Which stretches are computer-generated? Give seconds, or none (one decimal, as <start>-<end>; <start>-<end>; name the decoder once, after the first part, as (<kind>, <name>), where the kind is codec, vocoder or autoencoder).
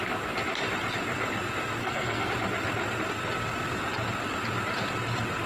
1.8-2.3 (codec, SNAC)